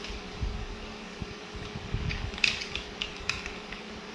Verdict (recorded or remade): remade